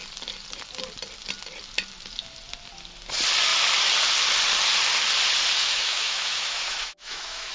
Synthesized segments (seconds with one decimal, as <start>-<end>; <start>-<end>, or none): 5.6-7.5